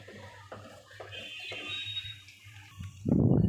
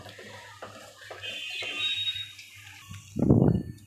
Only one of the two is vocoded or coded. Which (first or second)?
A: first